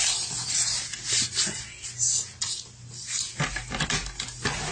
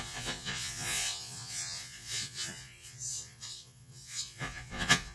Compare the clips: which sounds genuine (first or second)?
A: first